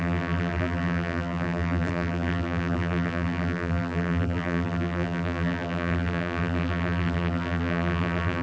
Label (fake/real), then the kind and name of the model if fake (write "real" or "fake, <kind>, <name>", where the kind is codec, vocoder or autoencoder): fake, vocoder, BigVGAN v2